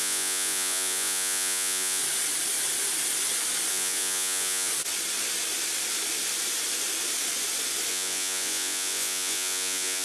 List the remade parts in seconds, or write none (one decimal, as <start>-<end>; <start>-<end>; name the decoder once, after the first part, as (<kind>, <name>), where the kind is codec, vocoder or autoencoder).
0.0-2.0 (vocoder, Vocos); 3.7-4.7; 7.9-10.0